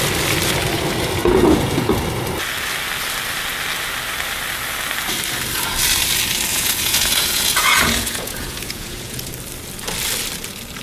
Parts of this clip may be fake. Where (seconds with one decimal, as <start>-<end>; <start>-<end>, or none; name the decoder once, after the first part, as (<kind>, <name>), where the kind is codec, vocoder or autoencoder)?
1.2-1.9 (vocoder, Vocos); 6.5-9.3